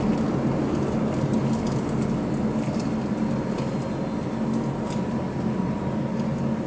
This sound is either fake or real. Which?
real